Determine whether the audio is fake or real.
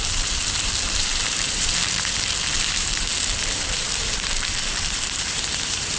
fake